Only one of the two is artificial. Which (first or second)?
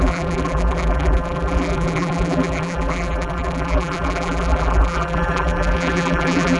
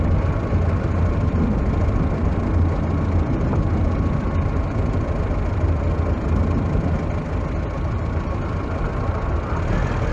first